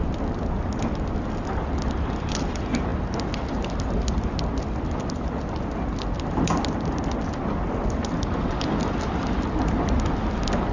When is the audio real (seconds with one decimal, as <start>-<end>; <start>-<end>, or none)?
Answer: 0.0-10.7